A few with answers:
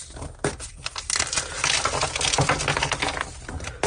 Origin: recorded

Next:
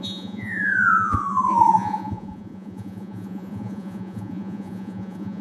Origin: remade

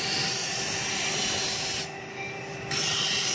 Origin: recorded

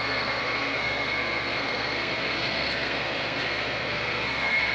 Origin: remade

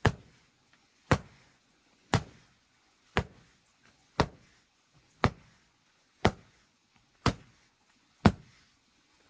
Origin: remade